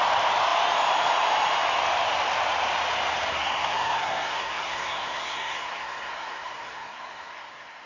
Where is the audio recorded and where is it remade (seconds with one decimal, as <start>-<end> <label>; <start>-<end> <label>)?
0.0-3.3 recorded; 3.3-7.9 remade